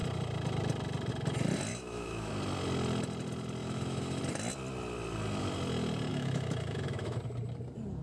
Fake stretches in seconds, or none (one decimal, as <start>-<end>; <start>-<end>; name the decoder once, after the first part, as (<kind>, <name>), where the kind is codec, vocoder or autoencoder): 1.7-2.3 (autoencoder, DAC-VAE); 3.6-4.2; 6.1-7.2